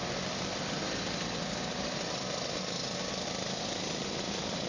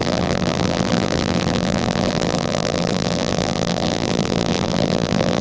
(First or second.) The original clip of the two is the first